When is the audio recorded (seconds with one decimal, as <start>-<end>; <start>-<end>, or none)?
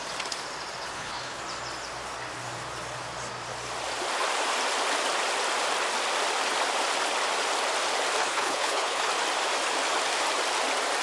0.0-0.9; 1.4-8.2; 9.1-11.0